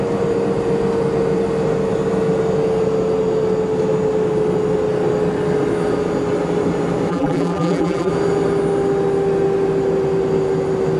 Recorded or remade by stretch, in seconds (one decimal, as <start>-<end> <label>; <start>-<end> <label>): 0.0-7.1 recorded; 7.1-8.1 remade; 8.1-11.0 recorded